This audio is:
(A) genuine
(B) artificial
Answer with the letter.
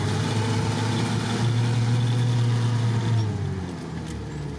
A